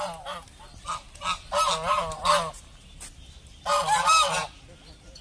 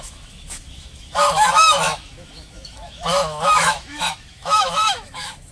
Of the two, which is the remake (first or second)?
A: second